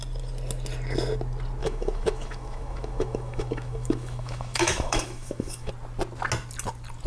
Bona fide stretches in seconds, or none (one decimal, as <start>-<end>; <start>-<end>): 0.0-1.6; 5.7-7.1

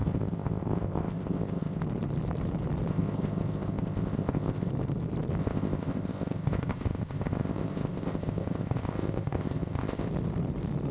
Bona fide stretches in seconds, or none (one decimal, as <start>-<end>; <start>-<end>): 1.8-2.9; 4.7-5.4; 10.1-10.9

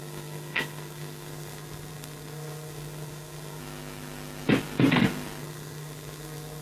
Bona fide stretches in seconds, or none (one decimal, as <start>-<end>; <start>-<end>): 3.6-5.4

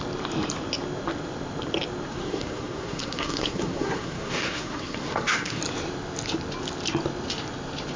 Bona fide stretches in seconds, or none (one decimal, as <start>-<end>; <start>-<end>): 0.0-2.1; 5.6-8.0

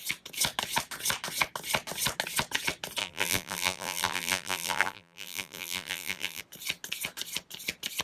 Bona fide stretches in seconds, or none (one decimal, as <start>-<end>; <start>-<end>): 0.0-3.0; 6.4-8.0

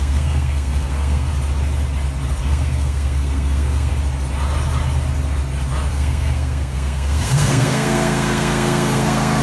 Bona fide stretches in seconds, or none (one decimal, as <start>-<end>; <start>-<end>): 1.3-2.4; 3.9-5.9

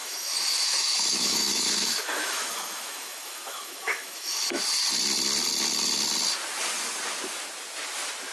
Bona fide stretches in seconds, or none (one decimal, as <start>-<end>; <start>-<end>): 4.6-8.3

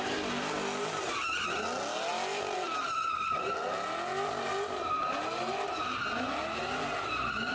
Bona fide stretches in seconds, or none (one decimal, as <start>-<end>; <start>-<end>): 0.0-7.5